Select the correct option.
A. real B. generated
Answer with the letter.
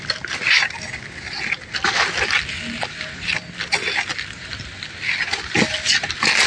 A